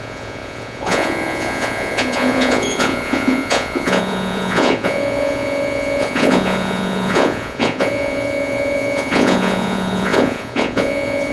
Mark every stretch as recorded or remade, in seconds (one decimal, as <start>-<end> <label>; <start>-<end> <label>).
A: 0.0-11.3 remade